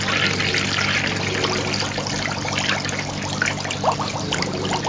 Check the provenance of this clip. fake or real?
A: real